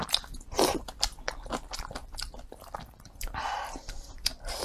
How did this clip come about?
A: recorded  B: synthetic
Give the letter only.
B